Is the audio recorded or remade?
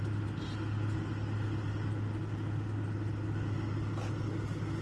recorded